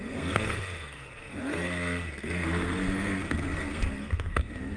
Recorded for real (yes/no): no